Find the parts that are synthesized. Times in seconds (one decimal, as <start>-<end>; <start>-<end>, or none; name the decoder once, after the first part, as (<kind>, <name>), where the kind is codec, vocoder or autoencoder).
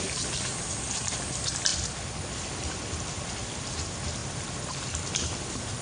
none